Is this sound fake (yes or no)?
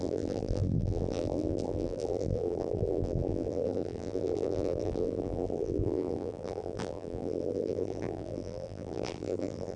yes